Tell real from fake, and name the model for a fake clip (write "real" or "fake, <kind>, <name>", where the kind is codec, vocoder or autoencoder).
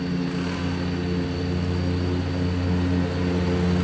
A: real